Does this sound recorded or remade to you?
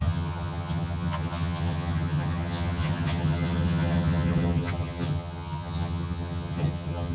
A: remade